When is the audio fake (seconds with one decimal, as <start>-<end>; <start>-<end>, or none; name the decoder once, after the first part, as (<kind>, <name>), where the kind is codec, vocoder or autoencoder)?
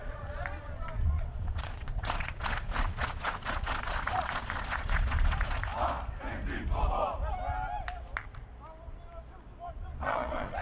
0.0-5.7 (vocoder, Vocos); 9.7-10.6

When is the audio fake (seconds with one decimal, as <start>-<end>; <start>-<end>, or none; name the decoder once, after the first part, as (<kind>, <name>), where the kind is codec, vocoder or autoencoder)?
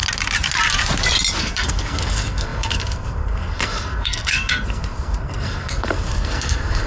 1.4-6.9 (codec, SNAC)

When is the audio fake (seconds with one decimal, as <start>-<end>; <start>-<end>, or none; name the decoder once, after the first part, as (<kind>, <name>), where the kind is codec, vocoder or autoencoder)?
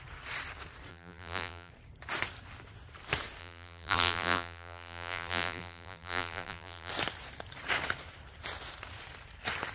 0.9-1.7 (vocoder, BigVGAN v2); 3.4-6.9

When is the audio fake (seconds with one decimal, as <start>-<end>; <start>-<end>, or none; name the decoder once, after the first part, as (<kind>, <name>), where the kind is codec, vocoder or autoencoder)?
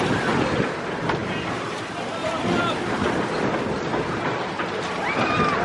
none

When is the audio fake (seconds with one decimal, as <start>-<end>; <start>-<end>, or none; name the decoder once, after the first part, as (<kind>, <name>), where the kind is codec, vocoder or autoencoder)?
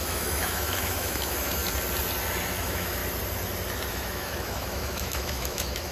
0.0-1.6 (autoencoder, DAC-VAE); 2.6-3.0; 3.9-5.9